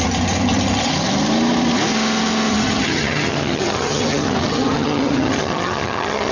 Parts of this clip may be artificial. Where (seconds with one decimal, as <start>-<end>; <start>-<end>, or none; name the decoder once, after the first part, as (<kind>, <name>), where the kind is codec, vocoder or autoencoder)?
2.5-6.3 (vocoder, HiFi-GAN)